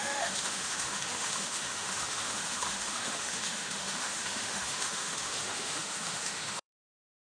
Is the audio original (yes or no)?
no